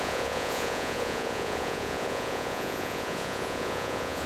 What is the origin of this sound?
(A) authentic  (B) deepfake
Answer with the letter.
B